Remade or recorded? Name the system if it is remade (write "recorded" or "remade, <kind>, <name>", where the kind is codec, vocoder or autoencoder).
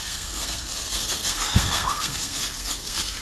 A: remade, codec, SNAC